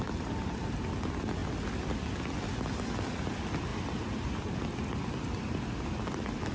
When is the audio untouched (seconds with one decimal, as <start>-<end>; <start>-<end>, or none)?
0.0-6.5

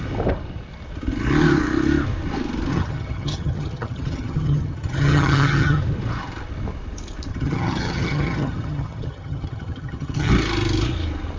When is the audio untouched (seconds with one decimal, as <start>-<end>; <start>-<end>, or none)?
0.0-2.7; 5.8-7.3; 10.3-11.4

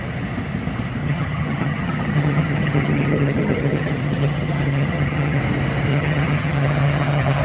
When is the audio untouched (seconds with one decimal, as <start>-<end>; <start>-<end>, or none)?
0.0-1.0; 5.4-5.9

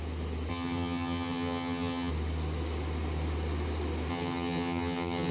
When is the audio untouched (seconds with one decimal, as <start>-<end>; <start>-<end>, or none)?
0.0-0.5; 2.1-4.1